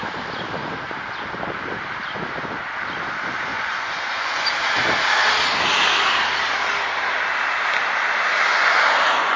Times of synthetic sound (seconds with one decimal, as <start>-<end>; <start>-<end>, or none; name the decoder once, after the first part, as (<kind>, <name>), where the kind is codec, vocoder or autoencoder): 3.5-4.5 (vocoder, Vocos); 8.5-9.4